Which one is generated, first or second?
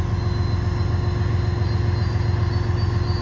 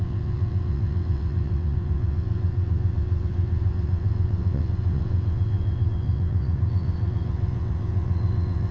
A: second